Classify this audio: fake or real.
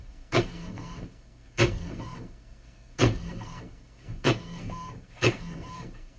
fake